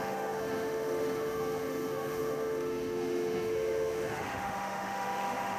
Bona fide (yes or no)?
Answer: no